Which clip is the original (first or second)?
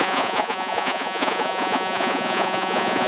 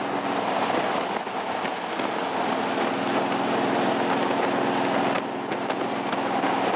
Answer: second